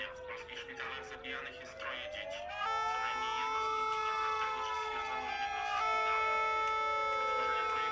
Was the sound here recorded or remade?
recorded